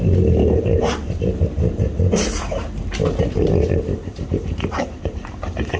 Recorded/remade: remade